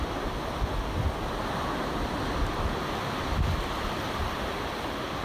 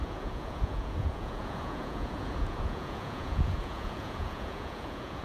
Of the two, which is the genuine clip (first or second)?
first